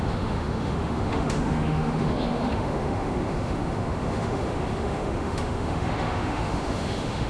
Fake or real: fake